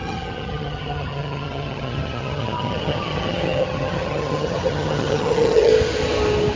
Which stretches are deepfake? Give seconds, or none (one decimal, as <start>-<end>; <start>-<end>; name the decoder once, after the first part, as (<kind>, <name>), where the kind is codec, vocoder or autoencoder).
0.0-5.7 (vocoder, HiFi-GAN)

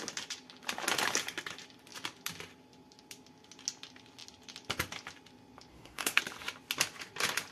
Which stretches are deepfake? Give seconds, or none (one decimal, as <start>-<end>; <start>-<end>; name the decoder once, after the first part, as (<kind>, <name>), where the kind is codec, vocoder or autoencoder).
5.7-6.2 (codec, SNAC)

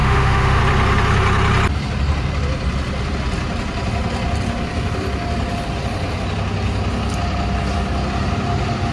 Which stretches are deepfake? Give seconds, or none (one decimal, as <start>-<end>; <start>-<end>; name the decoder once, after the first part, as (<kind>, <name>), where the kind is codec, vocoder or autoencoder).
0.0-0.6 (autoencoder, DAC-VAE)

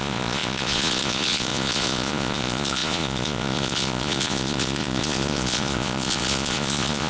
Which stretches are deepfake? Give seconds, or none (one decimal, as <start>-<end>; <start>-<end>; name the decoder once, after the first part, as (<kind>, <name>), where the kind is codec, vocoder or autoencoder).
0.0-7.1 (vocoder, Vocos)

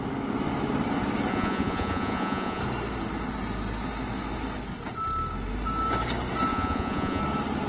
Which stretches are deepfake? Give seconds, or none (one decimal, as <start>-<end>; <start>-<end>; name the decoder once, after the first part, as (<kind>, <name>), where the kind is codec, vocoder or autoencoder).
1.3-2.6 (vocoder, Vocos); 6.5-7.2

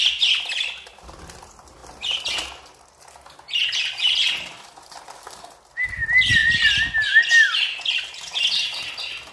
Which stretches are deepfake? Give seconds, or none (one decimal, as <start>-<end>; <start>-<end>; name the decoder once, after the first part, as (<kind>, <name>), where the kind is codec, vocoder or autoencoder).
none